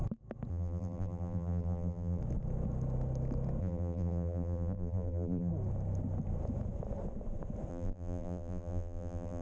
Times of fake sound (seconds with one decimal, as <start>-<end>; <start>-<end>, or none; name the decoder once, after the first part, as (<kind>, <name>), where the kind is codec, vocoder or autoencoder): 0.5-2.2 (vocoder, BigVGAN v2); 3.6-5.5; 7.7-9.4